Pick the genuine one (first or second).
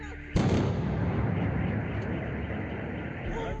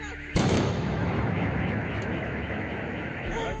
first